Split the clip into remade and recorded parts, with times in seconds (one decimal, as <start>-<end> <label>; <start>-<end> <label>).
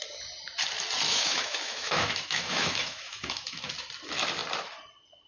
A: 0.0-1.1 recorded; 1.1-3.7 remade; 3.7-5.3 recorded